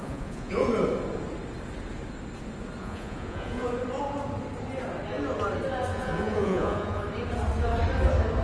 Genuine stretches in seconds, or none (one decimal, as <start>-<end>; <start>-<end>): 0.7-2.8; 3.7-5.9; 7.0-8.4